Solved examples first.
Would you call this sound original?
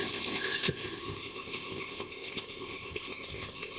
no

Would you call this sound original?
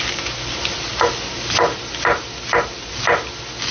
yes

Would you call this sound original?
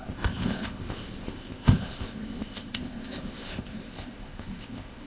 no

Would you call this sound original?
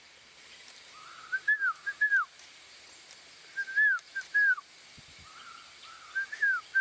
yes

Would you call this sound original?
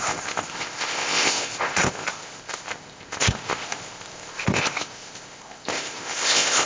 no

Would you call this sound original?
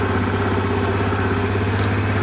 yes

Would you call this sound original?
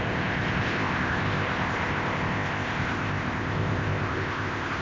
no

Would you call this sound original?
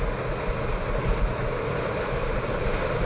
yes